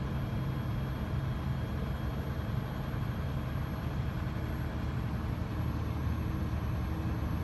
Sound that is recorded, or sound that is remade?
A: recorded